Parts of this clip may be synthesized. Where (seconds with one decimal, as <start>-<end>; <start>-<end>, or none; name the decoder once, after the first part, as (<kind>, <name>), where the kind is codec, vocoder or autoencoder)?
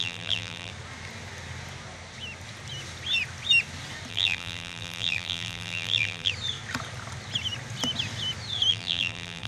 0.0-0.7 (vocoder, BigVGAN v2); 4.1-6.3; 8.7-9.5